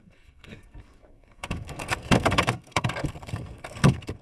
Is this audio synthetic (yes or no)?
yes